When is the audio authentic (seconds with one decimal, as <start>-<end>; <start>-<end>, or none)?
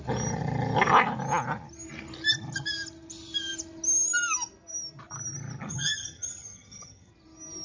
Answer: 0.0-5.7; 7.1-7.6